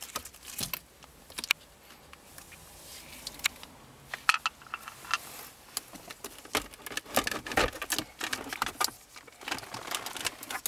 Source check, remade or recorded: recorded